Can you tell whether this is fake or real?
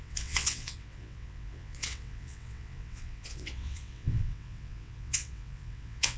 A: fake